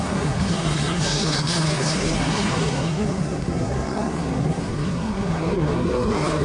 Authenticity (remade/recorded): remade